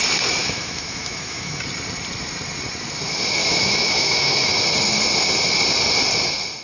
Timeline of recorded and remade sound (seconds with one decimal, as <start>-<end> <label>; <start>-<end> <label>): 0.0-0.4 recorded; 0.4-1.6 remade; 1.6-3.4 recorded; 3.4-4.5 remade; 4.5-6.6 recorded